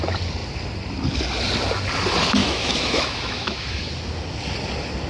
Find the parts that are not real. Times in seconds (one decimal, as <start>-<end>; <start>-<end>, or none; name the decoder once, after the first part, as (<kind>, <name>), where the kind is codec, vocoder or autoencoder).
2.4-3.8 (autoencoder, DAC-VAE)